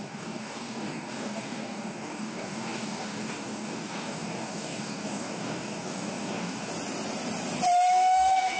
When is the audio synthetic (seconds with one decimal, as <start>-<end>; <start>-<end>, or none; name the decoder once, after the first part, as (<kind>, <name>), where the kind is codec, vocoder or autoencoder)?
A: 0.0-6.7 (codec, DAC); 7.9-8.6